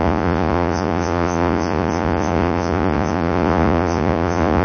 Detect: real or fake fake